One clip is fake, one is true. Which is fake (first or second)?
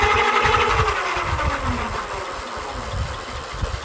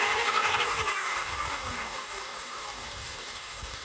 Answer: second